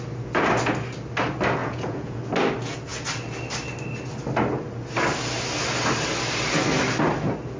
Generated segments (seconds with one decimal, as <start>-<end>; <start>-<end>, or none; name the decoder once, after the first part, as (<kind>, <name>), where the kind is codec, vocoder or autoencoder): 1.6-2.2 (vocoder, Vocos)